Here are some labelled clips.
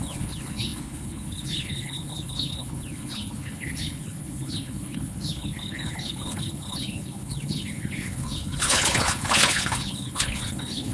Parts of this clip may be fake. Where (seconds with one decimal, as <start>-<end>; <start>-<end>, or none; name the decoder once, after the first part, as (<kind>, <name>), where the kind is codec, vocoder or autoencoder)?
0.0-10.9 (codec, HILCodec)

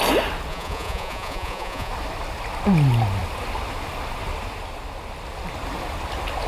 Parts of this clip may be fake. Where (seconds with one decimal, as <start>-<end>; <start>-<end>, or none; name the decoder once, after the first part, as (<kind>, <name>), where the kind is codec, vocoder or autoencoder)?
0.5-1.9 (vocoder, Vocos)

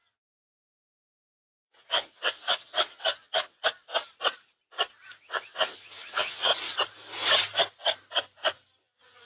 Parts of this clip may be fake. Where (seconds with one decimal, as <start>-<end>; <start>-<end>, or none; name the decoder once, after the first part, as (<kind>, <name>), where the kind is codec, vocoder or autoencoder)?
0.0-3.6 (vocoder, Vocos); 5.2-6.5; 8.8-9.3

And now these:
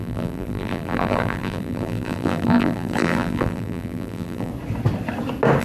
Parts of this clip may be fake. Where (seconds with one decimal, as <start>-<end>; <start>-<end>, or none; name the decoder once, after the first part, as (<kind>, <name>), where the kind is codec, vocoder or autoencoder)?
0.0-4.5 (vocoder, BigVGAN v2)

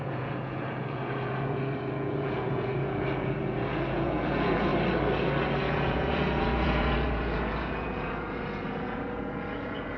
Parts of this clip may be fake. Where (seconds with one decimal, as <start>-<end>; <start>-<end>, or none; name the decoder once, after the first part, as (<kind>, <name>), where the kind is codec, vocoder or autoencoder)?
0.0-4.7 (vocoder, Vocos); 5.6-10.0